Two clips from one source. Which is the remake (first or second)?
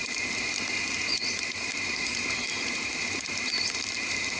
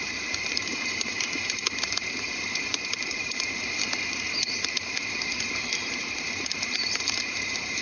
second